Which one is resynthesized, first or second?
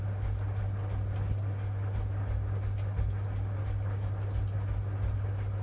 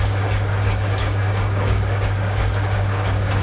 second